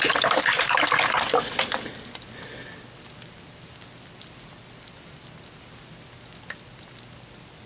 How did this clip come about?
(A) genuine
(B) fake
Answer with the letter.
A